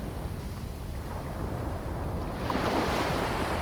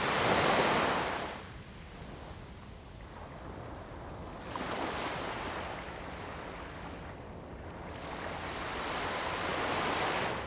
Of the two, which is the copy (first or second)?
first